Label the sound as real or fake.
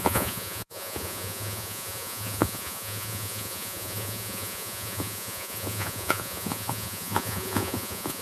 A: fake